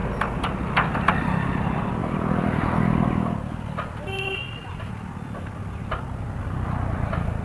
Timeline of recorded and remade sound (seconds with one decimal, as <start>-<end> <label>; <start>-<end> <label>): 0.0-7.4 recorded